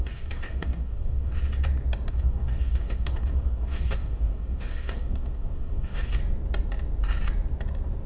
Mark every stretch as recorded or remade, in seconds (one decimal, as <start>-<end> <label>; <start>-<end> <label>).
0.0-1.3 remade; 1.3-2.1 recorded; 2.1-6.2 remade; 6.2-8.1 recorded